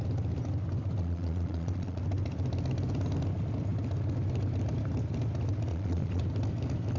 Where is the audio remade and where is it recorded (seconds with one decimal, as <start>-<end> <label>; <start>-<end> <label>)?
0.0-1.0 recorded; 1.0-2.0 remade; 2.0-5.7 recorded; 5.7-6.2 remade; 6.2-7.0 recorded